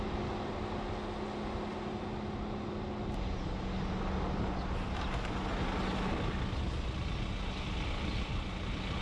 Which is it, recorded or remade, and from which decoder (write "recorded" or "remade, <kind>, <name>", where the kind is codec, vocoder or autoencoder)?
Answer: recorded